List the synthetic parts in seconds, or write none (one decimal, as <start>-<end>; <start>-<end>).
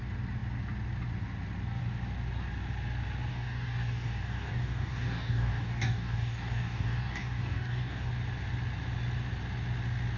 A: 3.3-8.1